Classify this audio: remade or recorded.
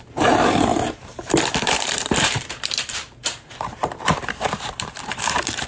remade